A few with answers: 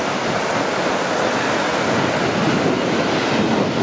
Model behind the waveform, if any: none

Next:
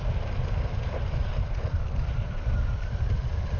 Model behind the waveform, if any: none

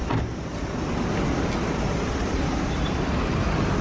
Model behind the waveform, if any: none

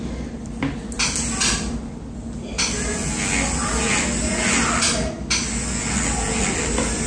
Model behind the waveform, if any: none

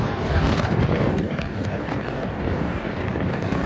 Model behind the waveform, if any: codec, DAC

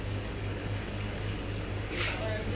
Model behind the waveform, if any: codec, DAC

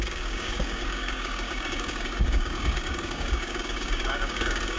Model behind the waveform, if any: codec, DAC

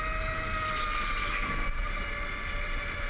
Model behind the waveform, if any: none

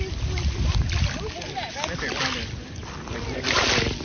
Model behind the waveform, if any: none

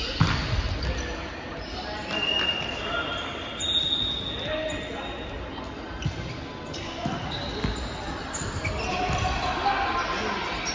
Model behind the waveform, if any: none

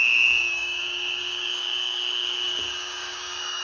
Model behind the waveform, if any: codec, DAC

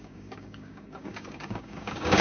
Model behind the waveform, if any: codec, DAC